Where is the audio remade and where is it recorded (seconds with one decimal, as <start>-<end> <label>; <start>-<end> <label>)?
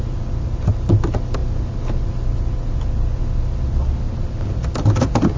0.0-5.4 recorded